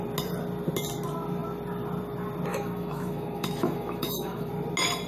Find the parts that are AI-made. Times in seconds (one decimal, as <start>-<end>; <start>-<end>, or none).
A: 2.5-4.5